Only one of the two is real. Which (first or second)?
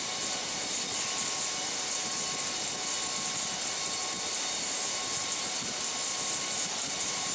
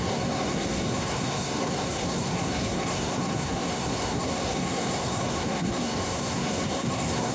first